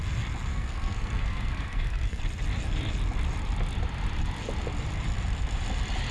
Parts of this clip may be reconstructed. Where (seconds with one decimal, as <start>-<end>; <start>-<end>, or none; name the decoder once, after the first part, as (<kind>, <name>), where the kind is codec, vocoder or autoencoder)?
0.5-2.2 (codec, SNAC)